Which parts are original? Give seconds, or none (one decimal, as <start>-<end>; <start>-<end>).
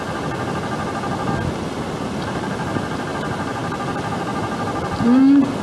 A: 0.0-5.6